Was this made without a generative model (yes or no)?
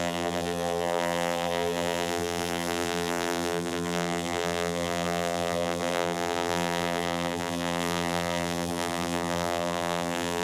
no